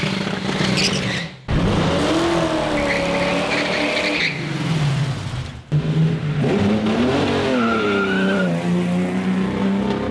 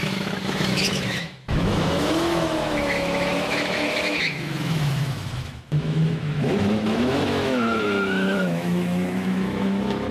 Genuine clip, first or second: first